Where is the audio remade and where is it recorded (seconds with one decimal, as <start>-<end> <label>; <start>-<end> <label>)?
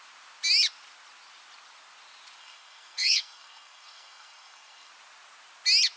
0.0-2.4 recorded; 2.4-4.9 remade; 4.9-6.0 recorded